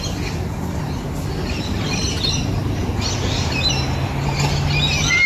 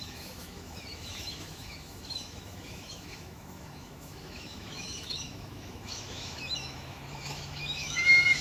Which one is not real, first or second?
second